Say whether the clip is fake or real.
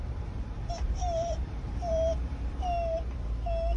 fake